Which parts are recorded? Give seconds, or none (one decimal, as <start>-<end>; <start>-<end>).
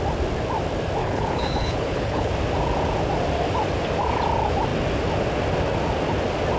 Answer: 0.0-1.0; 2.3-6.6